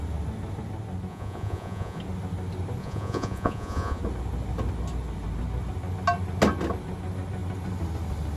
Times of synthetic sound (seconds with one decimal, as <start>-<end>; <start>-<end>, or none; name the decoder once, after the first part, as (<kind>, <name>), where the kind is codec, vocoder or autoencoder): 1.1-2.0 (vocoder, Vocos); 2.8-4.0

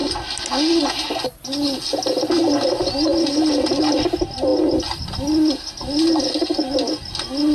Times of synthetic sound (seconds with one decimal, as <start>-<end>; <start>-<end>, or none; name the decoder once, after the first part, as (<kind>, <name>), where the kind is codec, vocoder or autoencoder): none